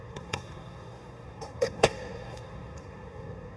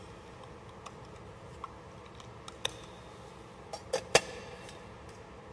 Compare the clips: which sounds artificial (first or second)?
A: first